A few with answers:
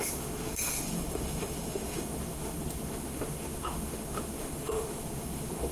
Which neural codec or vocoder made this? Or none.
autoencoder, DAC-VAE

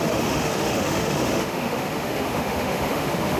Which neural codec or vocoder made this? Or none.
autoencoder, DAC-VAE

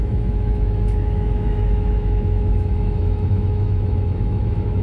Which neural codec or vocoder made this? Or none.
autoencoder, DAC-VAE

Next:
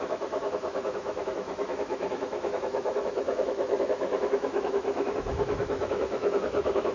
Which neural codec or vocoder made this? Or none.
autoencoder, DAC-VAE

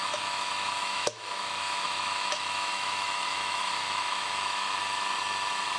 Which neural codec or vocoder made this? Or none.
autoencoder, DAC-VAE